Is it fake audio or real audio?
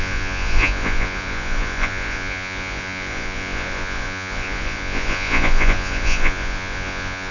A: fake